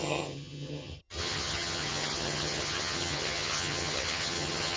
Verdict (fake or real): fake